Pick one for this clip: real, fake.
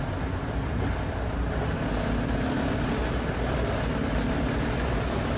real